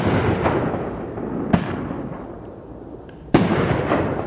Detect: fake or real real